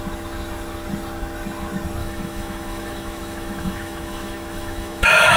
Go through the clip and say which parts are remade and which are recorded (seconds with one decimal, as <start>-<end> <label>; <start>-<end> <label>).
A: 0.0-2.0 recorded; 2.0-5.4 remade